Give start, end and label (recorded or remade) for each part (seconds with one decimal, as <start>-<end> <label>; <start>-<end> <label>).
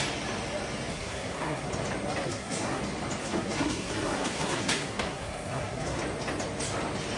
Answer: 0.0-0.9 recorded; 0.9-1.7 remade; 1.7-2.2 recorded; 2.2-2.8 remade; 2.8-3.2 recorded; 3.2-6.0 remade; 6.0-7.2 recorded